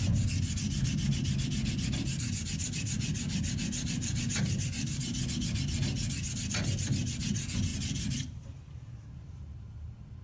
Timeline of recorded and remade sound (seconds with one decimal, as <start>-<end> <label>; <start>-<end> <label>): 0.0-4.0 recorded; 4.0-5.3 remade; 5.3-7.7 recorded; 7.7-10.2 remade